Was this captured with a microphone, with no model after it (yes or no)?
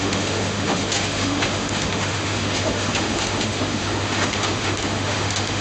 no